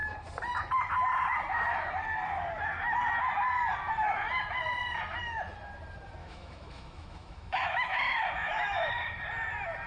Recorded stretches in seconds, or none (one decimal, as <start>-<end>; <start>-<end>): 0.0-6.2; 8.9-9.9